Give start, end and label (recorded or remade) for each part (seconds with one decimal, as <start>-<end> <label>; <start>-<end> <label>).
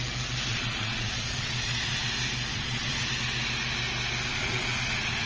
0.0-0.5 recorded; 0.5-2.1 remade; 2.1-2.5 recorded; 2.5-3.1 remade; 3.1-4.3 recorded; 4.3-5.3 remade